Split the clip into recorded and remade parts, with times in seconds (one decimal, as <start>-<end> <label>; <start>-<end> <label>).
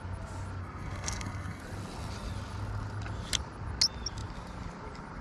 0.0-0.6 recorded; 0.6-1.6 remade; 1.6-5.2 recorded